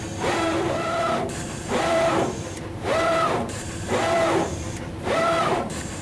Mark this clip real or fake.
fake